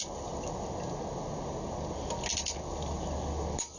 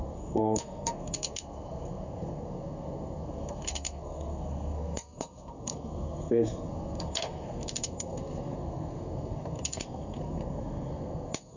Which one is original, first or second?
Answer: first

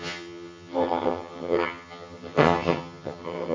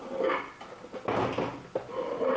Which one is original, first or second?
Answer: second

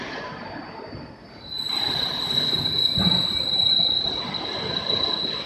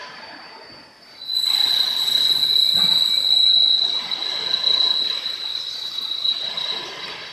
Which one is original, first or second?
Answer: second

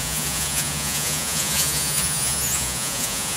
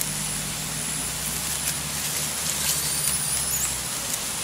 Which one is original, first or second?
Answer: second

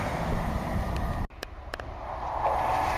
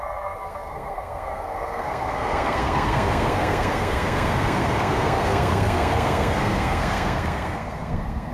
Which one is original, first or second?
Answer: first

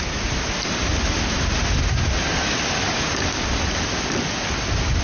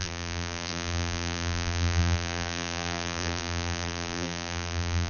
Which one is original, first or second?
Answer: first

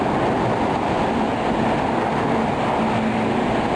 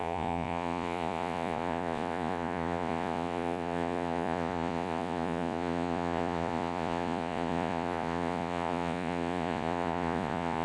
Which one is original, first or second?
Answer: first